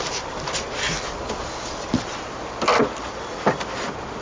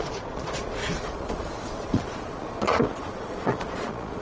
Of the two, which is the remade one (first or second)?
second